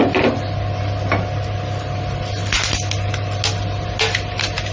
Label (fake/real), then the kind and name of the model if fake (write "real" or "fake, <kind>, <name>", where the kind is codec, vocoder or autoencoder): real